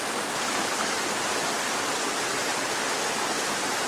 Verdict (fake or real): real